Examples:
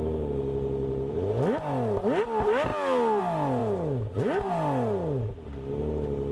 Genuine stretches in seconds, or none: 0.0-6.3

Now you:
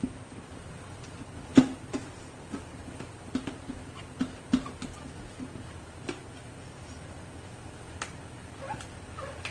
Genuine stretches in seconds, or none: 0.0-9.5